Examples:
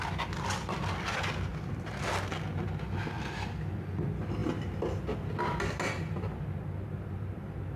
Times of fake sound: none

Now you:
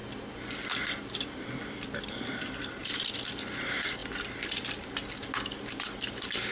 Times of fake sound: 4.0-4.5 (vocoder, BigVGAN v2)

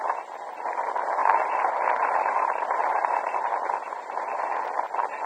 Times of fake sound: 1.2-4.4 (vocoder, BigVGAN v2)